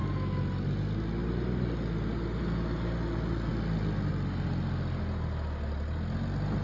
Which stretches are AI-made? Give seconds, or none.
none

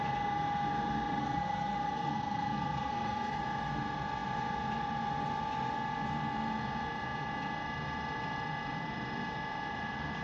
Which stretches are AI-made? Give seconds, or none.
1.2-3.4 (codec, SNAC)